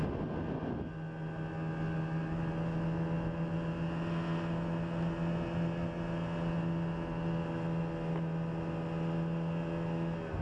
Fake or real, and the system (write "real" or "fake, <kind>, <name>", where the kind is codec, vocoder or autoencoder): real